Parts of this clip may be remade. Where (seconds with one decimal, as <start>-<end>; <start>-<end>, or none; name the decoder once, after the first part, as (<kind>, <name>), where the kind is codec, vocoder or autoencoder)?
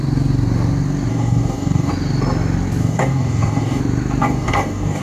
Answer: 1.1-1.9 (codec, DAC); 2.8-3.8; 4.2-5.0